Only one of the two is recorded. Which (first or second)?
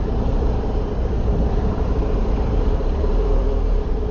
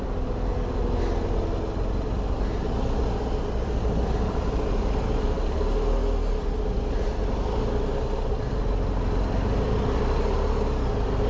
second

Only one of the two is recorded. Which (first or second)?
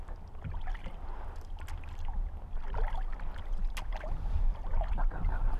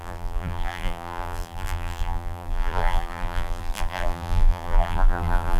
first